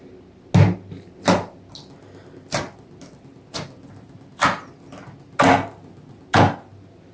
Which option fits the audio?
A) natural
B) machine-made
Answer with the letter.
A